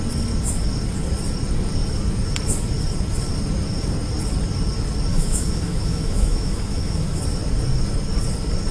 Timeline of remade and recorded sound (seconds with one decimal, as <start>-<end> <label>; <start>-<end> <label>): 0.0-5.1 recorded; 5.1-7.2 remade; 7.2-8.7 recorded